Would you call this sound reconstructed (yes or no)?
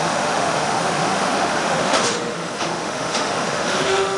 yes